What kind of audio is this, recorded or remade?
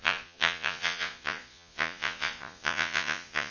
remade